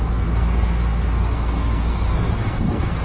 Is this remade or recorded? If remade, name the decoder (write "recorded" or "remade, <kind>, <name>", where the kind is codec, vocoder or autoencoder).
remade, codec, SNAC